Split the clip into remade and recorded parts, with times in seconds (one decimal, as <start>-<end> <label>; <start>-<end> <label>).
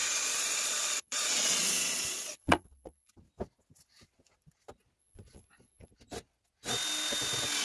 0.0-3.1 remade; 3.1-5.0 recorded; 5.0-5.9 remade; 5.9-7.6 recorded